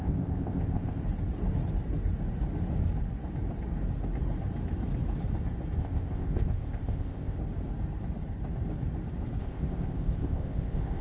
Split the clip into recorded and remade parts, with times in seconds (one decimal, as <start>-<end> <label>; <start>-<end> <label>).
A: 0.0-1.0 remade; 1.0-5.8 recorded; 5.8-7.4 remade; 7.4-9.4 recorded; 9.4-11.0 remade